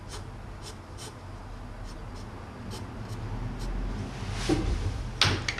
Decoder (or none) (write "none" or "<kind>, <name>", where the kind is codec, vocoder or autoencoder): none